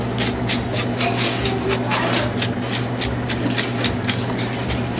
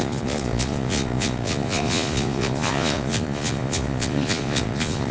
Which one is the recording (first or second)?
first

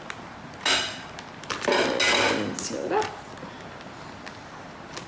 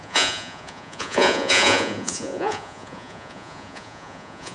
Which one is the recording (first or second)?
first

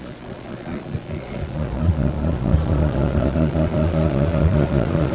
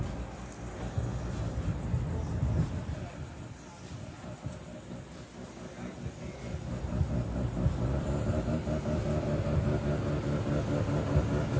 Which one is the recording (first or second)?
second